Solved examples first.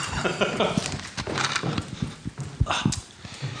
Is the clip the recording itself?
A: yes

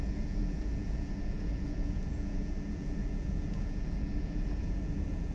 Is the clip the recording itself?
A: no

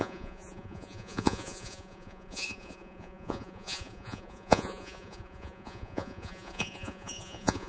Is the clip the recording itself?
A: no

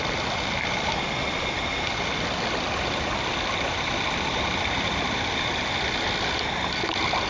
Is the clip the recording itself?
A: yes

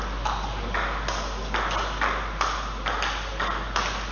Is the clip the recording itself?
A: yes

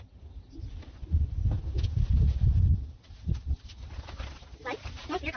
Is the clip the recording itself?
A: yes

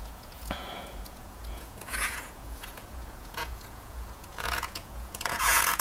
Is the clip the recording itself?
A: no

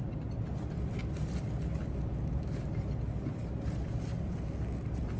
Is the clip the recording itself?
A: yes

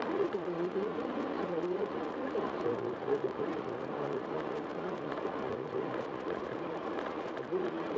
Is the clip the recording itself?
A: no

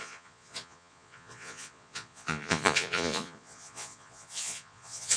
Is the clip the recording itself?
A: no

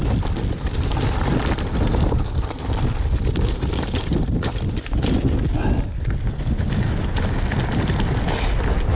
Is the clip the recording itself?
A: yes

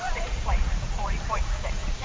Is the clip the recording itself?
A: no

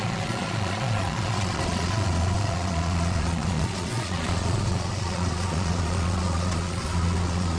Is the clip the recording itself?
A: no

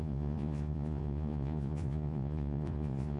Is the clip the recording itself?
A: no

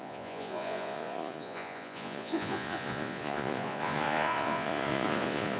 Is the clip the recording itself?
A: no